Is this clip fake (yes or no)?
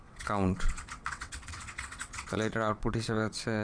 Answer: yes